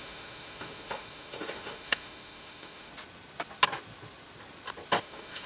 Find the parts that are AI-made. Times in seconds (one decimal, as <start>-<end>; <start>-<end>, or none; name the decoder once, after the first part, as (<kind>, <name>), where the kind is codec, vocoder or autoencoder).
0.0-2.9 (autoencoder, DAC-VAE); 5.0-5.5